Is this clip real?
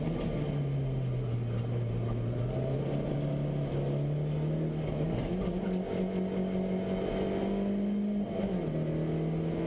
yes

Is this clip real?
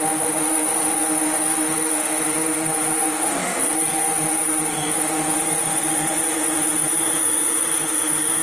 no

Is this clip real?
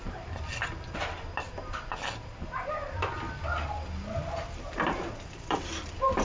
yes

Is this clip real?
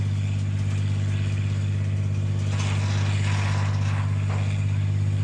yes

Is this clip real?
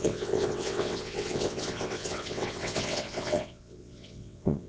no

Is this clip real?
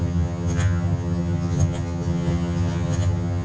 no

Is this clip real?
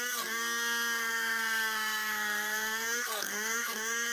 no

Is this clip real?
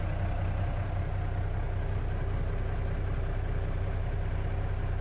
yes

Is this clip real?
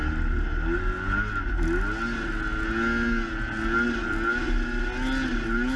yes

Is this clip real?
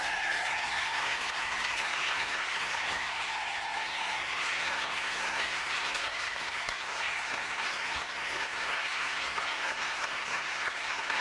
no